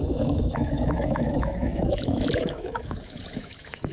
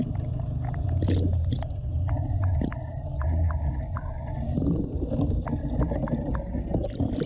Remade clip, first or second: first